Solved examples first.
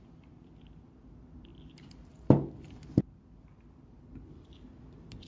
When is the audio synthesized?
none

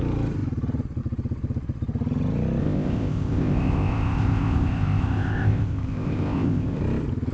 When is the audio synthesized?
2.6-6.8 (codec, ZipCodec)

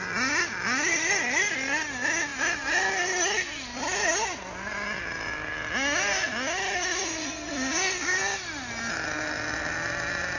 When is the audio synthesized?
none

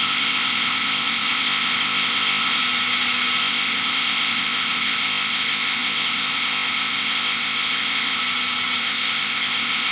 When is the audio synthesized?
0.0-2.6 (codec, ZipCodec); 3.4-8.2; 8.8-9.9

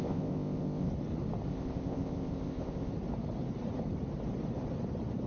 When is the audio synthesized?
0.0-0.9 (codec, ZipCodec); 1.5-2.9

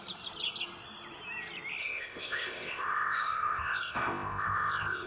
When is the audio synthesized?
1.8-5.1 (codec, ZipCodec)